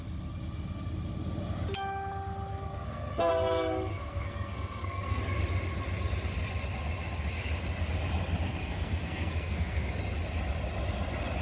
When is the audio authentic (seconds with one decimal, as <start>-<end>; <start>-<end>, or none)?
0.0-2.5; 3.3-3.9; 5.2-8.6; 9.9-11.4